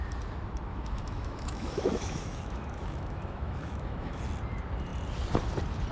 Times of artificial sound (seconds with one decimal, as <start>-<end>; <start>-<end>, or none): 0.7-4.2